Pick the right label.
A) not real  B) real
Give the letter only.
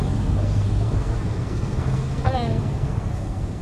A